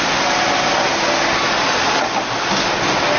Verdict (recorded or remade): recorded